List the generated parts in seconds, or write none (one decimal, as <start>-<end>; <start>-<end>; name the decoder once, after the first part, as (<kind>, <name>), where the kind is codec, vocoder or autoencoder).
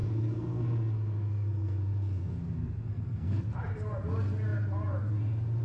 0.0-3.4 (codec, SNAC)